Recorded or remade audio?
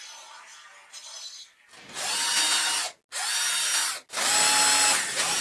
recorded